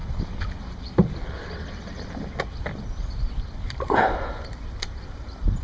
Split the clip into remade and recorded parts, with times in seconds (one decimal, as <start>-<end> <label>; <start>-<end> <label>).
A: 0.0-5.6 recorded

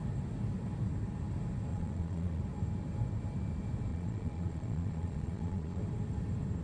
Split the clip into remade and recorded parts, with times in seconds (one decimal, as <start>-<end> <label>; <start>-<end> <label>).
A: 0.0-1.7 recorded; 1.7-2.4 remade; 2.4-3.9 recorded; 3.9-5.8 remade; 5.8-6.6 recorded

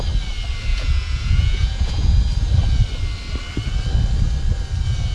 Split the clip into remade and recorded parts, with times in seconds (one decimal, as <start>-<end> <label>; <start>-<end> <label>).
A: 0.0-0.7 recorded; 0.7-2.2 remade; 2.2-5.1 recorded

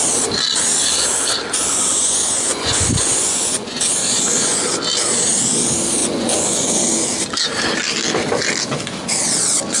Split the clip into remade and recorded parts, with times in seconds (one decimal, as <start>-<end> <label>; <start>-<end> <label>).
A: 0.0-1.9 recorded; 1.9-4.6 remade; 4.6-6.0 recorded; 6.0-6.7 remade; 6.7-9.8 recorded

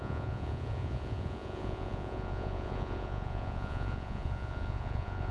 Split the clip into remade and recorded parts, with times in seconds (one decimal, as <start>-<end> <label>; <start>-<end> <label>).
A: 0.0-5.3 remade